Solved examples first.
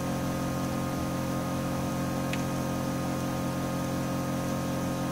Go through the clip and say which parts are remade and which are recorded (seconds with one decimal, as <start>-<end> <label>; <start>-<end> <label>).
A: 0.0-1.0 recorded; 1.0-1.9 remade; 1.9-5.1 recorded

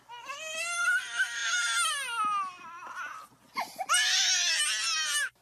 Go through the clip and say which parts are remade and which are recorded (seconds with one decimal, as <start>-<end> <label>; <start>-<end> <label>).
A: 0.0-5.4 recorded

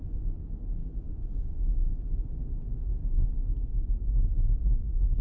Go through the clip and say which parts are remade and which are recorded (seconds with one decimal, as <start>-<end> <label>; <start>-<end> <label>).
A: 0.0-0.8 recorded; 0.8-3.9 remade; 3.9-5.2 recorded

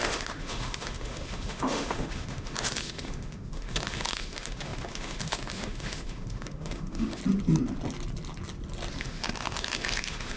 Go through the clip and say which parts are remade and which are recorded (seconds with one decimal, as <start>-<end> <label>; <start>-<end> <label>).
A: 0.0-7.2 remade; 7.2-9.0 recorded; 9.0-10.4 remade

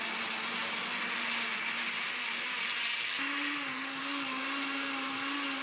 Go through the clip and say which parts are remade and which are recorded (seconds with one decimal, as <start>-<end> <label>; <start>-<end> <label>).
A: 0.0-5.6 recorded

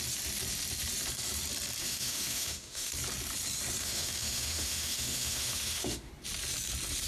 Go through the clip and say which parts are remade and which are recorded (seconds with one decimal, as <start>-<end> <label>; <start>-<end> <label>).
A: 0.0-1.8 recorded; 1.8-2.9 remade; 2.9-3.8 recorded; 3.8-6.1 remade; 6.1-7.1 recorded

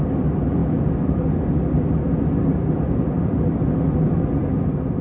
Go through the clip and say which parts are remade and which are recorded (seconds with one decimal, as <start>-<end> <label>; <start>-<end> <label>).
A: 0.0-5.0 recorded

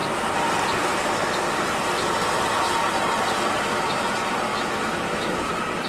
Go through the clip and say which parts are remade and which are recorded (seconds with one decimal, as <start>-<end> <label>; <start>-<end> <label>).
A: 0.0-4.5 recorded; 4.5-5.5 remade; 5.5-5.9 recorded